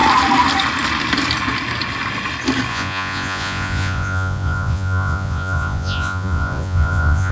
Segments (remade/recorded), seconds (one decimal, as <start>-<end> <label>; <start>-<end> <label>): 0.0-2.7 recorded; 2.7-7.3 remade